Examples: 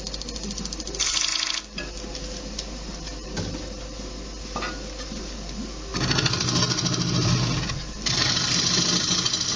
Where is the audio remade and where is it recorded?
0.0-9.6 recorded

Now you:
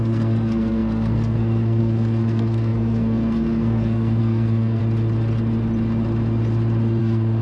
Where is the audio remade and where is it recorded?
0.0-4.8 remade; 4.8-7.0 recorded; 7.0-7.4 remade

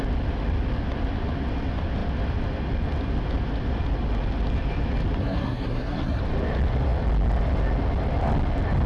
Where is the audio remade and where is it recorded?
0.0-5.2 recorded; 5.2-6.2 remade; 6.2-8.9 recorded

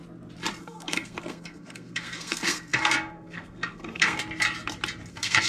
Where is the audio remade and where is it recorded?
0.0-0.6 recorded; 0.6-4.2 remade; 4.2-5.1 recorded; 5.1-5.5 remade